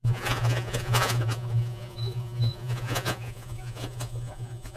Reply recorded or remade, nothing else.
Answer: remade